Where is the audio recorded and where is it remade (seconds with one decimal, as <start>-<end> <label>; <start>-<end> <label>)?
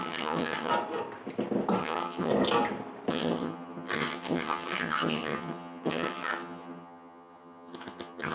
0.0-0.7 remade; 0.7-1.8 recorded; 1.8-2.3 remade; 2.3-3.1 recorded; 3.1-8.3 remade